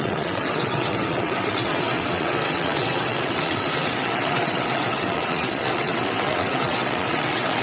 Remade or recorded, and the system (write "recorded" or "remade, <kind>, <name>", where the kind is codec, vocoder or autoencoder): remade, vocoder, WaveNeXt